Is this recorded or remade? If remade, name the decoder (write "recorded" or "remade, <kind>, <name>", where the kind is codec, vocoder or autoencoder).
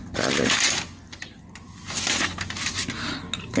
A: recorded